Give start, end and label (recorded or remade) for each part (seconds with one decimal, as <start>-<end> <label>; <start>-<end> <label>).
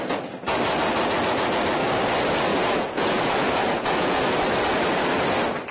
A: 0.0-2.5 recorded; 2.5-4.4 remade; 4.4-5.7 recorded